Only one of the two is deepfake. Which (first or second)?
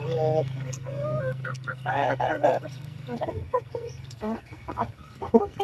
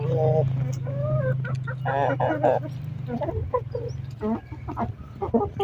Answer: first